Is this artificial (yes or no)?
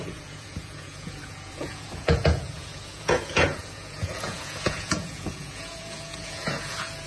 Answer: yes